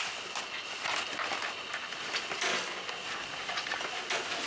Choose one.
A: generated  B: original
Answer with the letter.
B